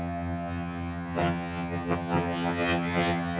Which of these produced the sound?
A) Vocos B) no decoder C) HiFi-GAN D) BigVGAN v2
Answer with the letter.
C